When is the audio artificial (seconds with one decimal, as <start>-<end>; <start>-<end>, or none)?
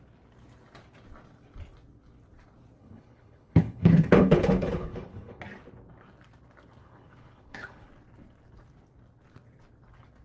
2.8-5.4; 6.8-7.9